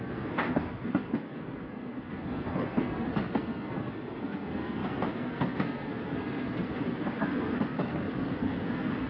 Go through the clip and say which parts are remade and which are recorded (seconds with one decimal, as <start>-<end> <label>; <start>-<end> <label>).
0.0-9.1 remade